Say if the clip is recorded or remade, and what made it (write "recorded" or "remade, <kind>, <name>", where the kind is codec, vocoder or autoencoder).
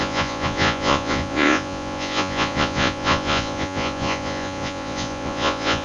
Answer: remade, vocoder, Vocos